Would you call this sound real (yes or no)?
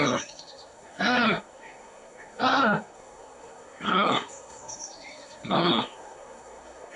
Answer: no